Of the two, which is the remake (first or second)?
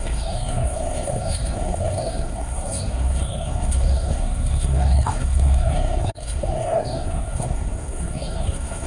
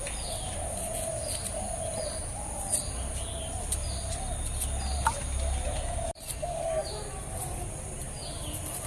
first